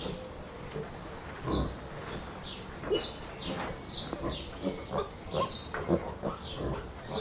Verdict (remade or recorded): recorded